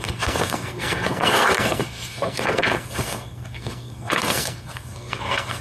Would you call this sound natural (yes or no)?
no